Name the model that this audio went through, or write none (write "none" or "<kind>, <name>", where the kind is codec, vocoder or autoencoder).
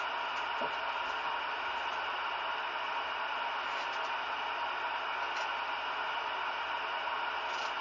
none